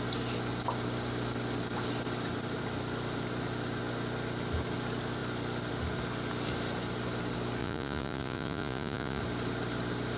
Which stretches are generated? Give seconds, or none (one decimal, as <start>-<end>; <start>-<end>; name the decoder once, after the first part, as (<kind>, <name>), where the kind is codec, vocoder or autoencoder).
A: 7.6-9.2 (vocoder, Vocos)